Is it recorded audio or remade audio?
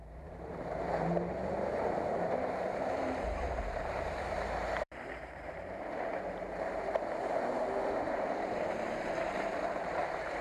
remade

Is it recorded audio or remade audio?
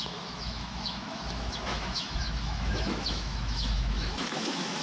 remade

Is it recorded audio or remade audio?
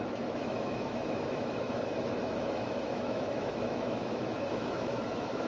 remade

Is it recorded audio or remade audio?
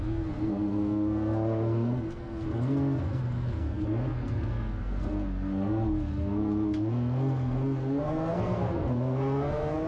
remade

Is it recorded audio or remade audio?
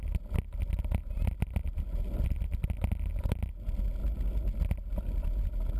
recorded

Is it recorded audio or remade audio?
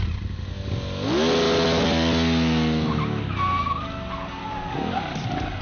recorded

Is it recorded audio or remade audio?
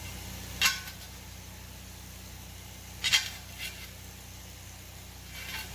recorded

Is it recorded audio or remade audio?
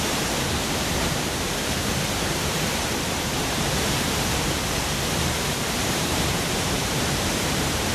remade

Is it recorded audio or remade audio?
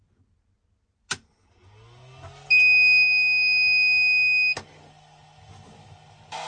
recorded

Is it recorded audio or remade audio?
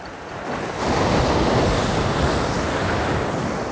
recorded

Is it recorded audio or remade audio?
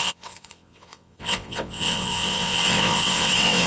remade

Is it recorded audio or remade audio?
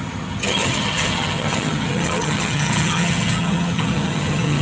remade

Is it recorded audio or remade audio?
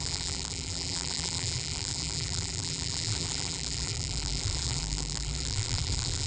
remade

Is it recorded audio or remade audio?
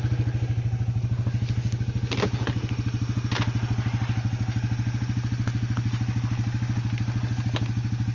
recorded